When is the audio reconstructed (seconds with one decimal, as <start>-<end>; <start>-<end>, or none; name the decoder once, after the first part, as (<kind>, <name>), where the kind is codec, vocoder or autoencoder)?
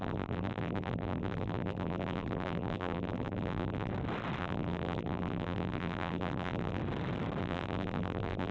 0.0-3.9 (vocoder, BigVGAN v2); 4.4-6.8; 7.4-8.5